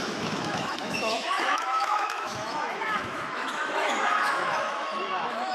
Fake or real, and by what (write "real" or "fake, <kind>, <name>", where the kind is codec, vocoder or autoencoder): fake, autoencoder, DAC-VAE